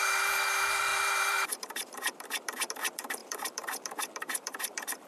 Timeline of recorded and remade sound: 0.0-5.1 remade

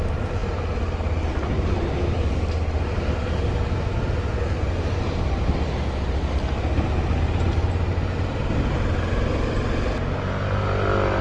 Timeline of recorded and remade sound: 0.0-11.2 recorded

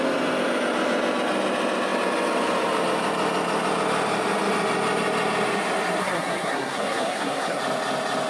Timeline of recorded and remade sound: 0.0-6.0 recorded; 6.0-7.6 remade; 7.6-8.3 recorded

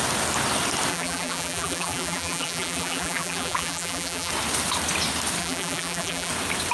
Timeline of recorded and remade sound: 0.0-0.9 recorded; 0.9-4.3 remade; 4.3-5.4 recorded; 5.4-6.3 remade; 6.3-6.7 recorded